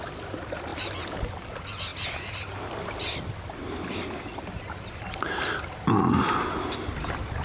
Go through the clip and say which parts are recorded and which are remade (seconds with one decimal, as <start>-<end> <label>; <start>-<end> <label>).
0.0-0.7 recorded; 0.7-1.3 remade; 1.3-7.4 recorded

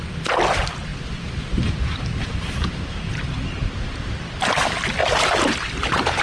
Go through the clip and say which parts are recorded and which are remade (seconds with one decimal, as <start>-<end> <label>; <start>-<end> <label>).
0.0-5.0 remade; 5.0-5.5 recorded; 5.5-6.2 remade

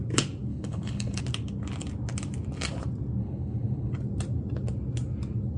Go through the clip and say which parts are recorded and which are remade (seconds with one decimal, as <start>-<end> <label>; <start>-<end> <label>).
0.0-0.5 recorded; 0.5-1.2 remade; 1.2-3.2 recorded; 3.2-3.9 remade; 3.9-5.6 recorded

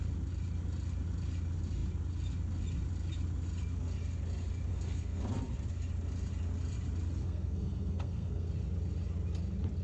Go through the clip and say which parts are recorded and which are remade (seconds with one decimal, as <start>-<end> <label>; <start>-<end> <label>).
0.0-4.7 recorded; 4.7-5.2 remade; 5.2-7.2 recorded; 7.2-8.5 remade; 8.5-9.8 recorded

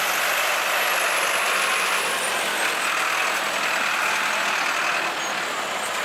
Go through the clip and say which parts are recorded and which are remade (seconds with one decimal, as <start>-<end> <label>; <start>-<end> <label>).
0.0-6.0 recorded

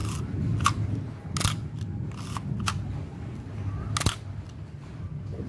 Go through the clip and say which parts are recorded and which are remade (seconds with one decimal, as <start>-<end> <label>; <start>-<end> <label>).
0.0-5.5 recorded